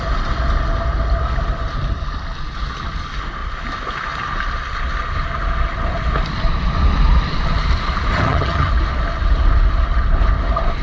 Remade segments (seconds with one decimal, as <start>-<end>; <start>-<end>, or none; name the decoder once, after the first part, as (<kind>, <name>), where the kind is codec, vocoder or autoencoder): 8.1-8.7 (vocoder, HiFi-GAN)